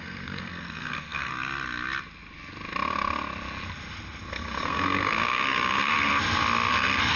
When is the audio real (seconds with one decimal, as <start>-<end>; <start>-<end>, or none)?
1.3-4.3; 6.1-6.7